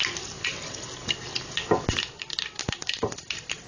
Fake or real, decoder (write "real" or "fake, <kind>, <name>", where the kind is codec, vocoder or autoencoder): real